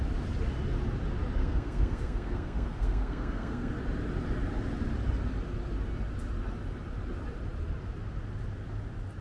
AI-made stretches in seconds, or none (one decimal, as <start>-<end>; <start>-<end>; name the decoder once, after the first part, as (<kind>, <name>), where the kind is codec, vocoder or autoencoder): 1.4-3.7 (codec, SNAC)